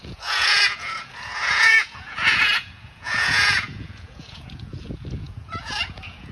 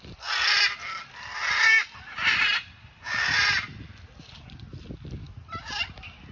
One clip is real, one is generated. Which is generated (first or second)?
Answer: first